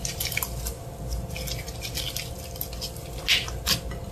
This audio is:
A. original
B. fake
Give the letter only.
A